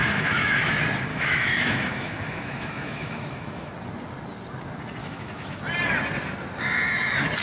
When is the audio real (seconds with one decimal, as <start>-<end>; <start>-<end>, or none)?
0.7-1.1; 3.7-5.0; 5.6-7.4

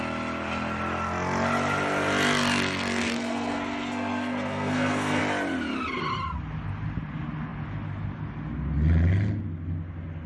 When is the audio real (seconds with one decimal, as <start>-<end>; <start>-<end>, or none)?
0.0-3.0; 5.2-10.3